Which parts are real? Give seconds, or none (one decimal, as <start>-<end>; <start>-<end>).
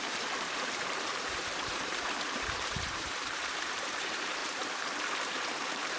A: 4.4-5.3